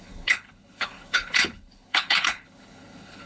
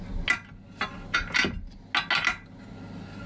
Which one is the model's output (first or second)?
first